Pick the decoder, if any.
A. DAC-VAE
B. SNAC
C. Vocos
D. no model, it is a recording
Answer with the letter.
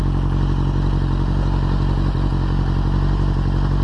D